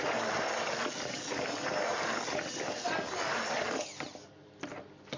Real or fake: real